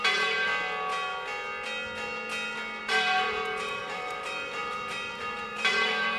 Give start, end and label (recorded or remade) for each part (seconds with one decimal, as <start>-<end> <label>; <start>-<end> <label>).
0.0-0.5 remade; 0.5-2.8 recorded; 2.8-6.2 remade